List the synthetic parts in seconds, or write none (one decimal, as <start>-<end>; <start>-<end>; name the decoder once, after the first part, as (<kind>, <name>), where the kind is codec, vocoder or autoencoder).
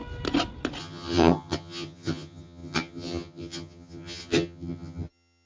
0.8-5.5 (vocoder, HiFi-GAN)